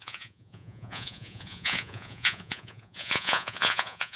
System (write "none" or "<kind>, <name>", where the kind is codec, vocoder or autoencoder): vocoder, Vocos